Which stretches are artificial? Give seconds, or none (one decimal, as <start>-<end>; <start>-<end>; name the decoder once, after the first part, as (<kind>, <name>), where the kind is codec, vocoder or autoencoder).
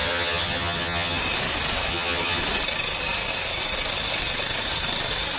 0.0-1.2 (vocoder, HiFi-GAN); 1.9-2.4